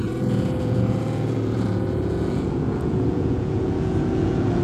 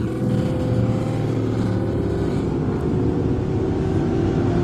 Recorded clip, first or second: second